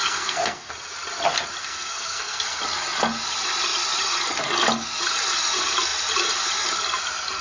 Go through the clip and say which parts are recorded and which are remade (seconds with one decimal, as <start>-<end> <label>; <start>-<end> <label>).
0.0-0.7 remade; 0.7-1.6 recorded; 1.6-2.6 remade; 2.6-7.4 recorded

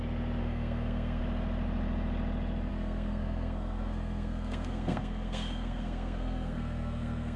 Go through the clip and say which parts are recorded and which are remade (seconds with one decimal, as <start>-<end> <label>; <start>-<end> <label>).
0.0-0.4 recorded; 0.4-1.2 remade; 1.2-2.7 recorded; 2.7-7.4 remade

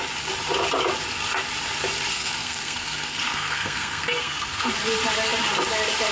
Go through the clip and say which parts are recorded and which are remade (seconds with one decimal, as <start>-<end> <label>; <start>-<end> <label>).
0.0-2.1 recorded; 2.1-4.7 remade; 4.7-6.1 recorded